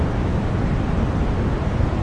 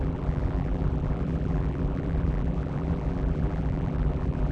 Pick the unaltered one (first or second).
first